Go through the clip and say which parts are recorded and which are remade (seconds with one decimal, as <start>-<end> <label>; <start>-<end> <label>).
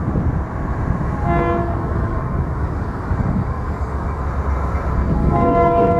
0.0-1.6 recorded; 1.6-4.2 remade; 4.2-5.2 recorded; 5.2-6.0 remade